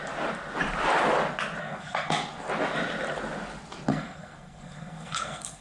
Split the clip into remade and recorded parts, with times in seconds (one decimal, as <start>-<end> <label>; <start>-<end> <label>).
0.0-1.6 recorded; 1.6-2.2 remade; 2.2-3.9 recorded; 3.9-5.6 remade